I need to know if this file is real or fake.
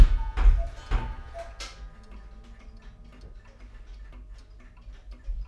real